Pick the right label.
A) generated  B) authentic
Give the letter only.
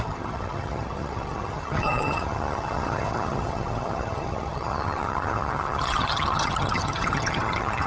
A